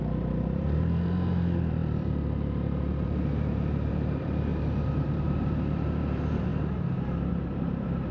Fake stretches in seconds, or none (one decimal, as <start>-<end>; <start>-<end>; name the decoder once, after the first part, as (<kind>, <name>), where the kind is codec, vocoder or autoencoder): 0.0-4.5 (vocoder, BigVGAN v2); 5.0-6.5; 7.3-8.1